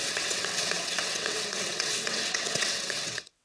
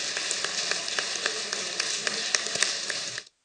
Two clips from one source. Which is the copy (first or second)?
first